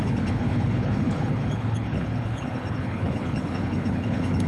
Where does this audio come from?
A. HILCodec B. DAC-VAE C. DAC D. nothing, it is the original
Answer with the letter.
A